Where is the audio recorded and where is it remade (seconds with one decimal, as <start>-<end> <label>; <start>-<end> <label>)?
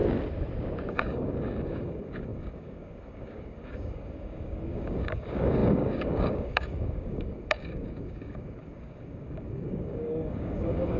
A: 0.0-0.9 recorded; 0.9-11.0 remade